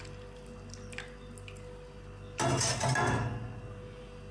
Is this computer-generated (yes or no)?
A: no